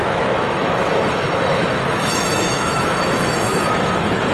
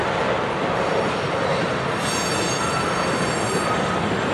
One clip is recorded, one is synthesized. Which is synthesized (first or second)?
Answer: first